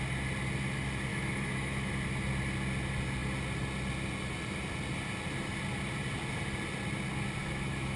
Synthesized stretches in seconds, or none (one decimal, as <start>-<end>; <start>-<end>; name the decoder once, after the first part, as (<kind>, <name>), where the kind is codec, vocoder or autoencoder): 1.1-1.9 (autoencoder, DAC-VAE); 7.4-8.0